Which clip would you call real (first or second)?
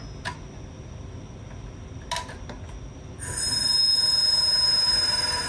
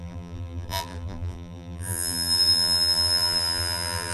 first